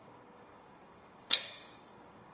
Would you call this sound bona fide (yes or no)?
no